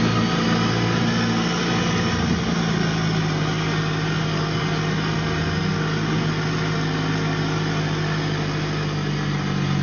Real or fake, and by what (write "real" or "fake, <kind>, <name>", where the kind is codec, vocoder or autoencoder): real